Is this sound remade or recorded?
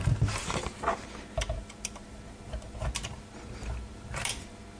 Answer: recorded